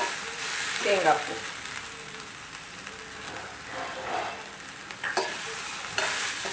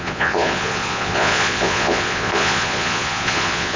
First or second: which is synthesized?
second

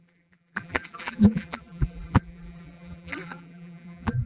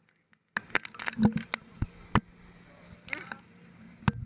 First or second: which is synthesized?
first